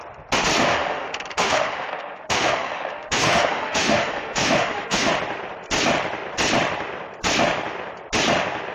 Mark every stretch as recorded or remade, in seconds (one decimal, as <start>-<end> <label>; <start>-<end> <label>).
0.0-0.7 recorded; 0.7-5.1 remade; 5.1-8.7 recorded

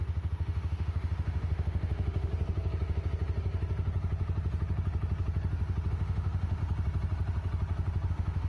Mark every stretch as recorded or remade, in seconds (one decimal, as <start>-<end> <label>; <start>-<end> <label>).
0.0-2.3 remade; 2.3-5.9 recorded; 5.9-6.6 remade; 6.6-8.1 recorded; 8.1-8.5 remade

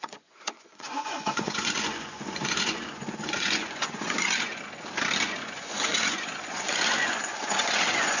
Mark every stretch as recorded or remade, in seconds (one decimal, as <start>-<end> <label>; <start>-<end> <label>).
0.0-4.5 remade; 4.5-5.2 recorded; 5.2-8.2 remade

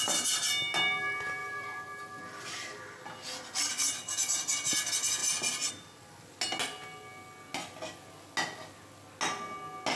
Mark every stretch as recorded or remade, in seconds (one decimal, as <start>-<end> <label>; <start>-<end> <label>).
0.0-1.4 recorded; 1.4-3.7 remade; 3.7-5.2 recorded; 5.2-5.7 remade; 5.7-10.0 recorded